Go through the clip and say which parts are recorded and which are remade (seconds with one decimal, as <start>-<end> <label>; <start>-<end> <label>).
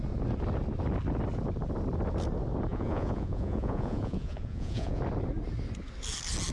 0.0-2.7 recorded; 2.7-5.0 remade; 5.0-6.5 recorded